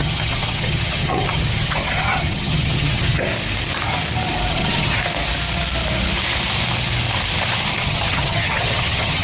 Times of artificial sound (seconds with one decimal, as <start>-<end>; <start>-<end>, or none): 0.0-3.3; 4.5-5.0; 7.8-9.2